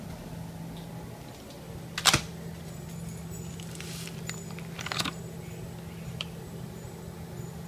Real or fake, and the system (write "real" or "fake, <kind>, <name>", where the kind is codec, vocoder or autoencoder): real